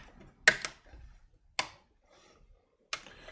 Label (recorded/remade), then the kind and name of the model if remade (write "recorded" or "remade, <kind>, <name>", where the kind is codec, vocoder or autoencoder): recorded